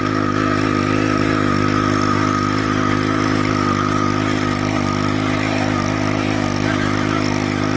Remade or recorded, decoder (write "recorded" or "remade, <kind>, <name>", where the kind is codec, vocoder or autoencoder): recorded